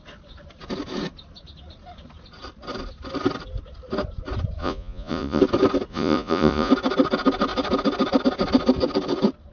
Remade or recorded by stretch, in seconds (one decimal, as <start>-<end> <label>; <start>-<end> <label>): 0.0-4.6 recorded; 4.6-5.4 remade; 5.4-5.9 recorded; 5.9-6.7 remade; 6.7-9.5 recorded